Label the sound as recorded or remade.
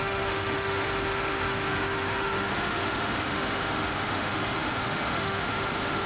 remade